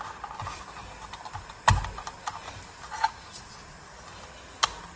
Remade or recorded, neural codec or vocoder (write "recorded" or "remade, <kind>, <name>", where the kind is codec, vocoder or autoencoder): recorded